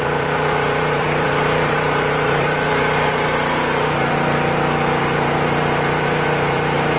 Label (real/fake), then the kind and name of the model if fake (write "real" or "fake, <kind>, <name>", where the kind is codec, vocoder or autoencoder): fake, vocoder, BigVGAN v2